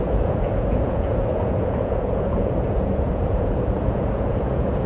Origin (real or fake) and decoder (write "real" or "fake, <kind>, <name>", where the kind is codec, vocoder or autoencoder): fake, vocoder, Vocos